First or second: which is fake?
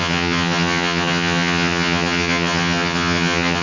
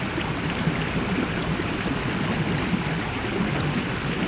first